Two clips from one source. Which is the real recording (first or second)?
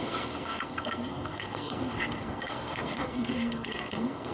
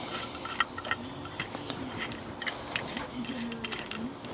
second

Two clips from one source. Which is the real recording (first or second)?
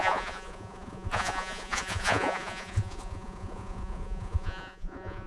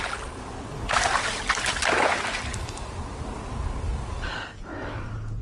second